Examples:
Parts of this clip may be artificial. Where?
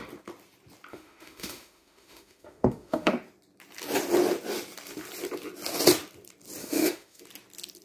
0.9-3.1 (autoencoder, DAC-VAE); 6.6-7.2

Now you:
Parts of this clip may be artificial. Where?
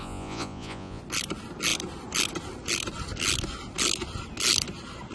0.0-1.0 (vocoder, Vocos)